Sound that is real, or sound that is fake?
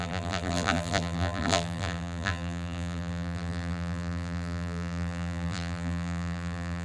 fake